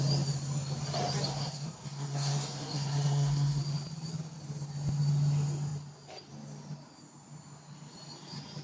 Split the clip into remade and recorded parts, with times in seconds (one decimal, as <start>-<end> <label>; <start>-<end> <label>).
0.0-1.3 recorded; 1.3-3.6 remade; 3.6-8.6 recorded